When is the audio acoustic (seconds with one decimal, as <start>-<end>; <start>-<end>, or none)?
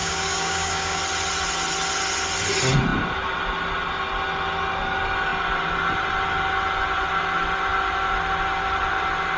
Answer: 1.0-9.4